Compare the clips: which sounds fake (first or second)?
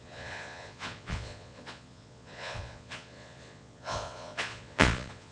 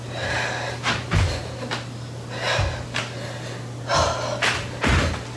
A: first